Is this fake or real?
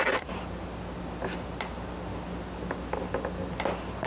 real